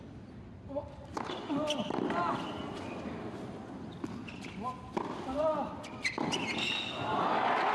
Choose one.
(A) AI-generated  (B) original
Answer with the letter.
B